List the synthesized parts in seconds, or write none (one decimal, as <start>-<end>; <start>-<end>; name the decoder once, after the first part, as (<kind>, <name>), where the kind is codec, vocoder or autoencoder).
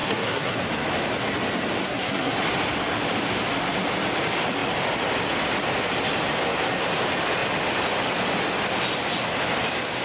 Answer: 0.0-0.6 (codec, SNAC); 1.8-2.3